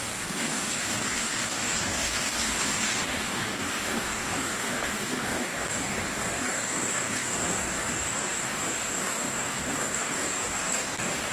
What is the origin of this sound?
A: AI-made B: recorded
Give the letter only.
A